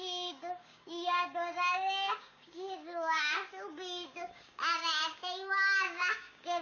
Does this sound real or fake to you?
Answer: fake